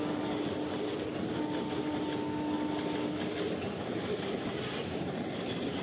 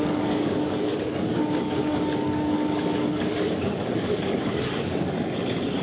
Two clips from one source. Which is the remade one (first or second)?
second